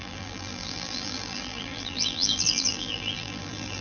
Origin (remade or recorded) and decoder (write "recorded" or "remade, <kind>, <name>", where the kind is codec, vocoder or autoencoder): remade, vocoder, BigVGAN v2